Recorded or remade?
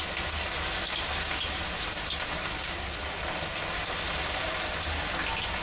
recorded